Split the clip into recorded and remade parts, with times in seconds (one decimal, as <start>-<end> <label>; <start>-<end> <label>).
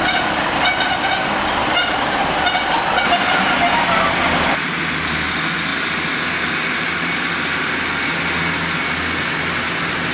0.0-10.1 recorded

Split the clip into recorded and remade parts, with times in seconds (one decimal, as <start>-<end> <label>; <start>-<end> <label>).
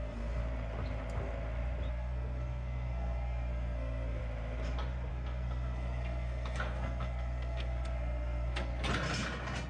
0.0-0.4 remade; 0.4-1.9 recorded; 1.9-4.2 remade; 4.2-5.1 recorded; 5.1-8.7 remade; 8.7-9.7 recorded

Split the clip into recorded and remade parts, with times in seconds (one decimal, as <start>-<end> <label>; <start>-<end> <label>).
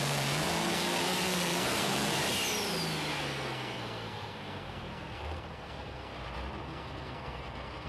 0.0-2.2 remade; 2.2-3.1 recorded; 3.1-6.1 remade; 6.1-6.6 recorded; 6.6-7.9 remade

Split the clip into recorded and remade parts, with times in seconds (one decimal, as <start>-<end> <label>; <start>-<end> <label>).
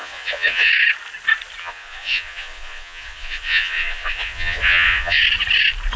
0.0-0.7 remade; 0.7-1.6 recorded; 1.6-5.2 remade; 5.2-6.0 recorded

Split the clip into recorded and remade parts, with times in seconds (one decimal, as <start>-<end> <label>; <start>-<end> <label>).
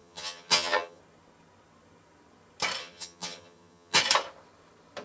0.0-1.0 remade; 1.0-2.8 recorded; 2.8-4.0 remade; 4.0-5.0 recorded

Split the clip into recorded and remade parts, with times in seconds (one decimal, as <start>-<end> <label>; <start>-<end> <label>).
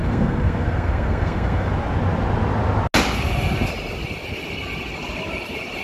0.0-1.7 remade; 1.7-5.8 recorded